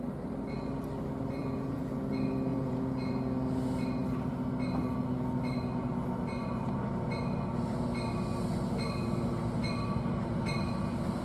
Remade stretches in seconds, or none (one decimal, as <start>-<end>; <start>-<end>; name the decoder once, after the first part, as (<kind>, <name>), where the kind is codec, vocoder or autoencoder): 1.4-1.9 (vocoder, Vocos); 2.5-3.1

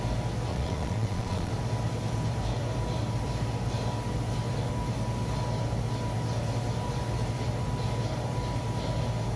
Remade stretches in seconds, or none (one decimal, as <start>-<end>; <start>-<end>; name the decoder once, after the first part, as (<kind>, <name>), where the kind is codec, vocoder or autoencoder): 0.5-1.5 (vocoder, Vocos)

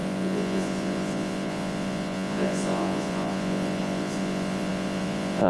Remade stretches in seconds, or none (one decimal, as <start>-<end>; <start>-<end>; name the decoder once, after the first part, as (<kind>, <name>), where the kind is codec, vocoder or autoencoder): 0.0-5.5 (vocoder, Vocos)